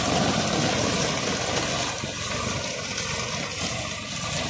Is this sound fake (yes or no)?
no